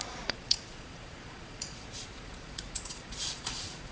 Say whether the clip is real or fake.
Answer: fake